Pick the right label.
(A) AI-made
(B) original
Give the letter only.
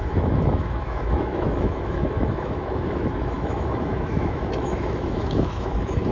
A